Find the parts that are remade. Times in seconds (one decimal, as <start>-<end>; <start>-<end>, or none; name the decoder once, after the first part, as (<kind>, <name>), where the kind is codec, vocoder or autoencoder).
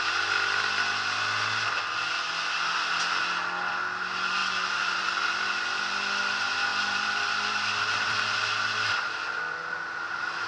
4.4-5.8 (vocoder, BigVGAN v2); 6.7-8.9